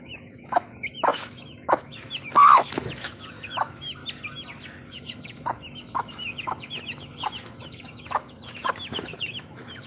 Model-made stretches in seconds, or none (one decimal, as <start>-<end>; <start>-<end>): 0.0-4.0; 4.9-9.9